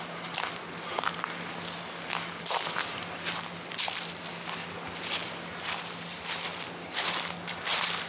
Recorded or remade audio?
recorded